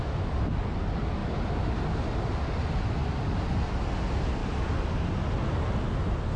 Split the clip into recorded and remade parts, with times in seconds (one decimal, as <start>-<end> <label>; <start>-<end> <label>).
0.0-6.4 recorded